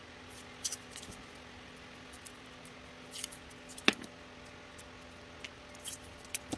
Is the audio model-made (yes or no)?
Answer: no